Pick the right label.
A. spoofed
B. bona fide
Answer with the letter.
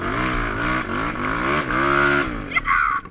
B